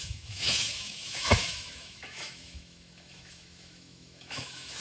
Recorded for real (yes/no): no